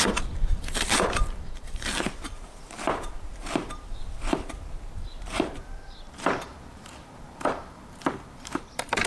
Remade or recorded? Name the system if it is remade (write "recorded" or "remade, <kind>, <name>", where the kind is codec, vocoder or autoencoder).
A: remade, vocoder, BigVGAN v2